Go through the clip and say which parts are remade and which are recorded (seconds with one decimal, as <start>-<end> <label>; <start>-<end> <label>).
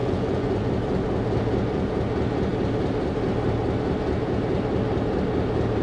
0.0-0.7 remade; 0.7-5.8 recorded